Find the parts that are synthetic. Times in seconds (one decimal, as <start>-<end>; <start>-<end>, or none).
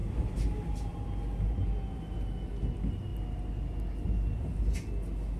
none